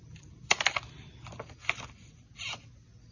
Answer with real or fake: real